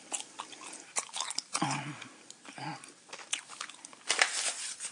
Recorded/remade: recorded